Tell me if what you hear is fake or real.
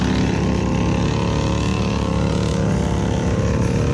real